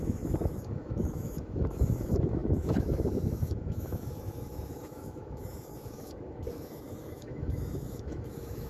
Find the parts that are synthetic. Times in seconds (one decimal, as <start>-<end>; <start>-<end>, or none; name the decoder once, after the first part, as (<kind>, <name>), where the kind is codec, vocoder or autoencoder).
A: 0.0-8.7 (autoencoder, DAC-VAE)